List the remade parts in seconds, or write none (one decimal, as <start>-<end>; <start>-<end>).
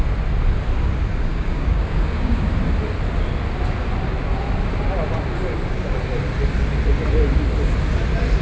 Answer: 1.3-2.4